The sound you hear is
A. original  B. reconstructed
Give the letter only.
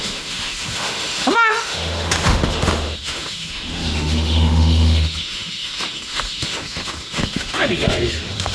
B